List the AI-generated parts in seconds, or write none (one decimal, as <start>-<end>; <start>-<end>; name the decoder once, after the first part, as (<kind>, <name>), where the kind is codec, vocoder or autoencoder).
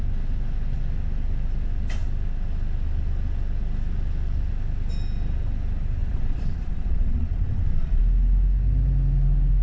6.0-8.0 (vocoder, Vocos)